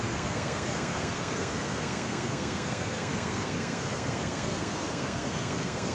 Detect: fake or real fake